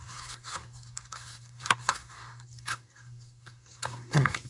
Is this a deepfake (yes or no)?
yes